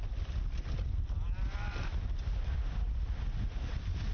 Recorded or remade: recorded